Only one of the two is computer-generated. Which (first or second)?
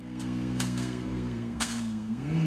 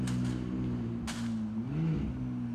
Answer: first